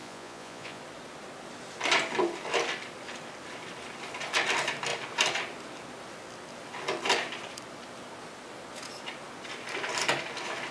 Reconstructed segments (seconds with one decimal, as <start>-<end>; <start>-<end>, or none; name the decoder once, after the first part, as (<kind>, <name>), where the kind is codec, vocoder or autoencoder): 0.0-0.8 (vocoder, Vocos)